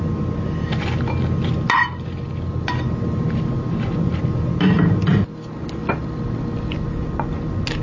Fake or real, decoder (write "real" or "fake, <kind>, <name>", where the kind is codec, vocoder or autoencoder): real